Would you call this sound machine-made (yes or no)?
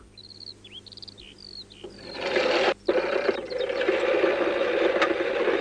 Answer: no